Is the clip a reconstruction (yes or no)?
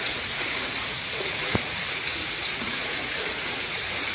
yes